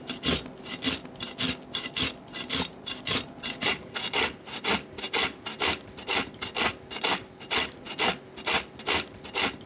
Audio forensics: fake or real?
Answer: real